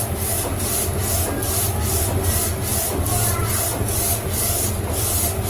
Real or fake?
real